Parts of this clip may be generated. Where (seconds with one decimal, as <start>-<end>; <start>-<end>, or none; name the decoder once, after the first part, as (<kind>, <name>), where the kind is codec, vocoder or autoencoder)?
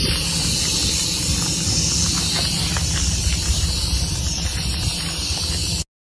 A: none